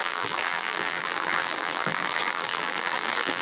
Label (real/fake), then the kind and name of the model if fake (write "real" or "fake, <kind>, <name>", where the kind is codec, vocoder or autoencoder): fake, vocoder, BigVGAN v2